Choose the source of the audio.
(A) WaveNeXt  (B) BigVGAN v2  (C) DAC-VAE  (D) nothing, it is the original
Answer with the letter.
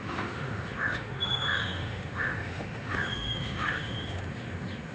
C